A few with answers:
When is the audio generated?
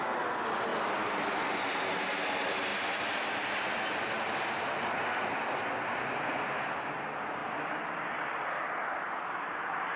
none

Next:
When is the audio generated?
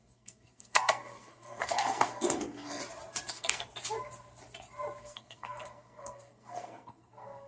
0.0-2.8 (codec, SNAC); 3.3-3.7; 5.0-7.5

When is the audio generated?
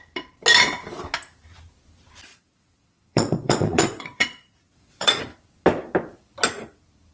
2.3-5.2 (vocoder, Vocos)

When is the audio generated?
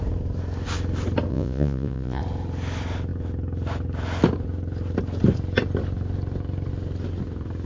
1.3-2.2 (vocoder, Vocos)